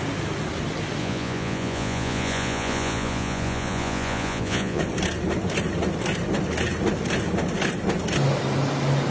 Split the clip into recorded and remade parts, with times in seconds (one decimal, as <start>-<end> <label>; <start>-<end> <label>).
0.0-1.0 recorded; 1.0-4.8 remade; 4.8-9.1 recorded